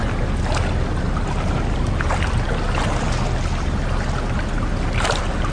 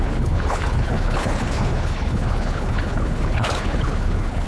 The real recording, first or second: first